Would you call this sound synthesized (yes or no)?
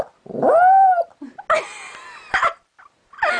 no